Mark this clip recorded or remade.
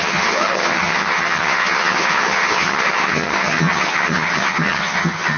remade